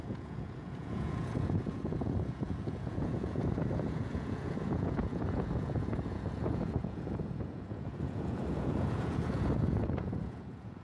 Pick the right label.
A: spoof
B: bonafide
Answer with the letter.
A